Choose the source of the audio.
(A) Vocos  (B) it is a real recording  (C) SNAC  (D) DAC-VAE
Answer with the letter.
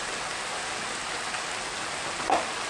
B